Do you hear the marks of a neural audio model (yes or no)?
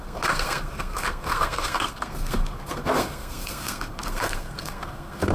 yes